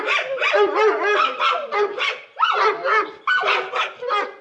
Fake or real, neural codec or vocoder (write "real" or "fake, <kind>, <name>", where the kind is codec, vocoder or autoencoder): real